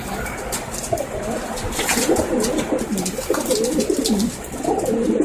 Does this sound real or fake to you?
real